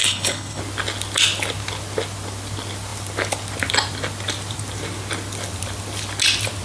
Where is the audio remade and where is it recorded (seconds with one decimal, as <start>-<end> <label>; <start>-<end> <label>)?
0.0-0.6 remade; 0.6-6.6 recorded

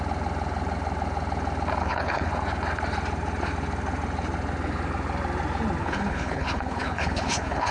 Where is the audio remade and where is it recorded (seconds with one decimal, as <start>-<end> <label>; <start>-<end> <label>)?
0.0-1.8 recorded; 1.8-2.3 remade; 2.3-5.8 recorded; 5.8-7.7 remade

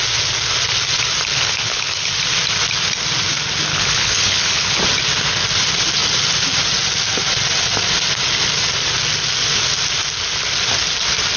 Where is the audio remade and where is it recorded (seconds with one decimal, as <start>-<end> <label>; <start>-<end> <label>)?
0.0-1.3 recorded; 1.3-2.1 remade; 2.1-3.7 recorded; 3.7-4.8 remade; 4.8-11.4 recorded

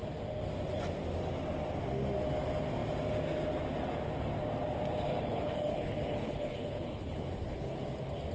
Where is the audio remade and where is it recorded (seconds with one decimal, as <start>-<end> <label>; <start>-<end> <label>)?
0.0-5.1 recorded; 5.1-7.8 remade; 7.8-8.3 recorded

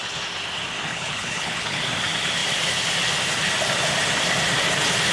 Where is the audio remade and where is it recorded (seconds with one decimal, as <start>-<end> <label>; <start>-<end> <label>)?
0.0-0.9 recorded; 0.9-1.8 remade; 1.8-5.1 recorded

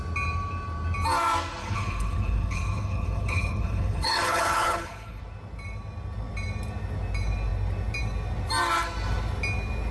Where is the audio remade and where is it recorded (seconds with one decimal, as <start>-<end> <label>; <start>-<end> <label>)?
0.0-1.6 recorded; 1.6-5.2 remade; 5.2-9.9 recorded

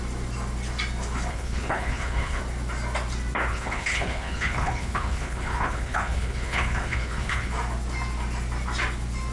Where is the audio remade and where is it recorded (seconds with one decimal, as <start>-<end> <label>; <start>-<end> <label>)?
0.0-1.3 recorded; 1.3-2.4 remade; 2.4-3.5 recorded; 3.5-7.5 remade; 7.5-9.3 recorded